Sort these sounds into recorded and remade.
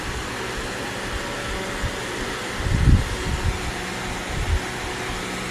recorded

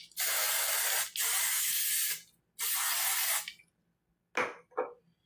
recorded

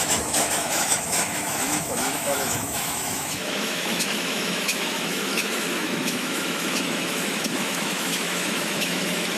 remade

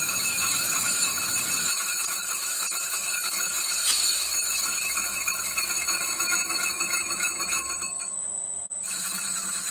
remade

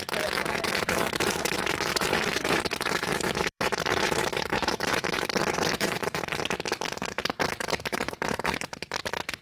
remade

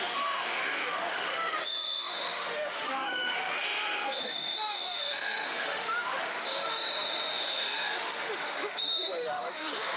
remade